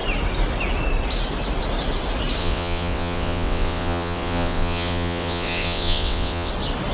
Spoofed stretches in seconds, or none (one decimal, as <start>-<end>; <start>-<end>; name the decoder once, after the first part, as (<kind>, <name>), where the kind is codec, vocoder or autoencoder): 2.4-6.5 (vocoder, WaveNeXt)